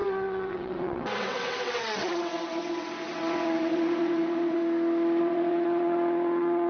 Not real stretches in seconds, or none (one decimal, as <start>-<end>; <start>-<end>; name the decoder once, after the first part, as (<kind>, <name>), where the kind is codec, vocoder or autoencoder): 0.0-4.6 (vocoder, WaveNeXt); 5.2-6.7